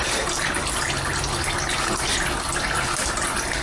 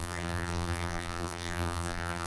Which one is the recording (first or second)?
first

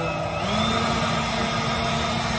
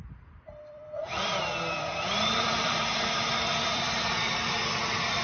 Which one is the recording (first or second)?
first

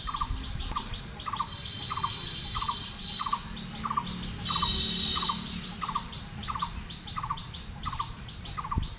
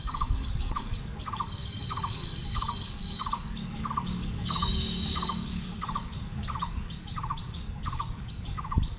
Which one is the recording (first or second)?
first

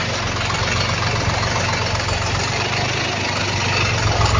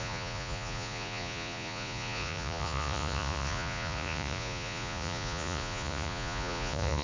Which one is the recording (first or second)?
first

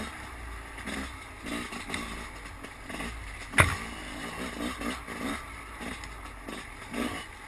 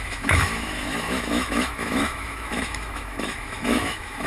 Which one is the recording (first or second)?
first